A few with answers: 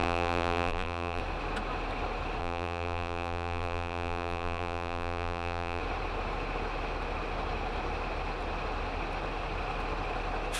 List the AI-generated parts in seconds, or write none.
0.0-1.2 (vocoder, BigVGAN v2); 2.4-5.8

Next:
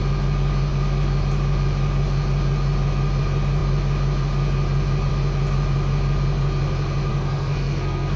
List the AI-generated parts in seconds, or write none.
7.1-8.2 (codec, SNAC)

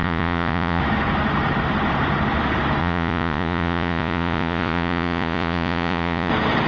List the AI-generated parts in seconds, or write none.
0.0-0.8 (vocoder, Vocos); 2.8-6.3

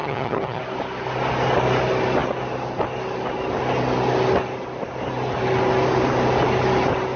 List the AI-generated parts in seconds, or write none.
0.0-0.6 (vocoder, HiFi-GAN)

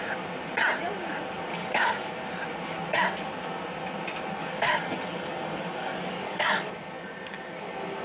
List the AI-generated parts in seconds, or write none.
1.5-2.1 (codec, DAC); 4.4-6.7

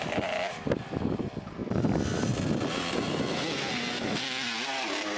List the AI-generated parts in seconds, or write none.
none